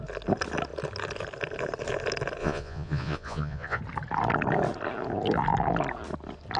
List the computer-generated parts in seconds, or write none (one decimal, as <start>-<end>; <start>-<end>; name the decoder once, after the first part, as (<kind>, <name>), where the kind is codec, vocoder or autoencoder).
2.4-3.8 (vocoder, Vocos)